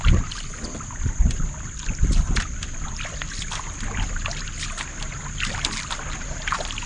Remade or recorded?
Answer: recorded